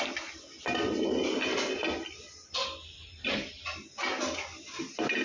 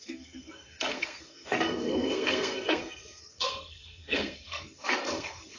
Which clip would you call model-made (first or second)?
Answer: second